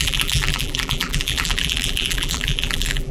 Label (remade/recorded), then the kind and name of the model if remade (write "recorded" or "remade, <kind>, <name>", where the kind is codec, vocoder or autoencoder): remade, vocoder, BigVGAN v2